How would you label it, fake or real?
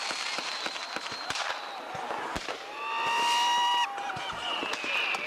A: real